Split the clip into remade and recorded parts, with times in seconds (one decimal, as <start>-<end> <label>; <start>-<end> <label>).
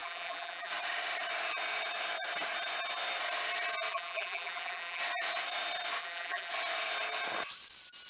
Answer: 0.0-0.7 remade; 0.7-3.9 recorded; 3.9-5.0 remade; 5.0-6.0 recorded; 6.0-6.5 remade; 6.5-8.1 recorded